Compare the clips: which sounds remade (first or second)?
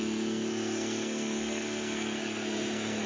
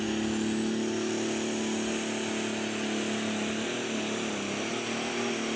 first